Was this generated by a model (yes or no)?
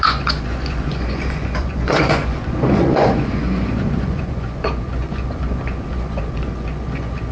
yes